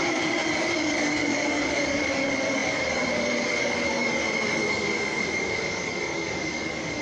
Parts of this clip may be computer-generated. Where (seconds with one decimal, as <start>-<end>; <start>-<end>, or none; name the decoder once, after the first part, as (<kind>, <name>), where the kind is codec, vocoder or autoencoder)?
0.0-7.0 (codec, DAC)